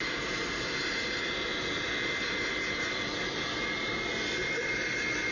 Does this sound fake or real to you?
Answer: real